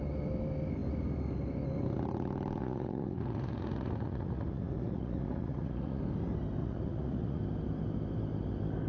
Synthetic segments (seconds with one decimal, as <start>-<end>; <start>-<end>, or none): 2.6-6.0; 6.6-7.4